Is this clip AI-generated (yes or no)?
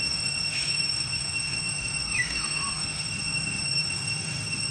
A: yes